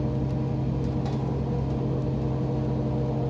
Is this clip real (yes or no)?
yes